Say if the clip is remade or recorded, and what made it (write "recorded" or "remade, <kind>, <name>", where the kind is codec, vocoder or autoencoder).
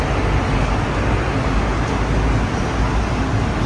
recorded